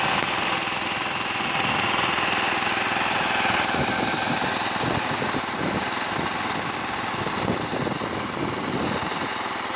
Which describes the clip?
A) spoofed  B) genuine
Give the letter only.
B